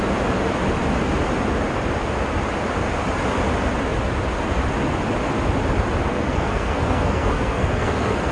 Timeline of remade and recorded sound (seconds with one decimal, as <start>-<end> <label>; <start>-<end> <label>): 0.0-6.1 recorded; 6.1-8.3 remade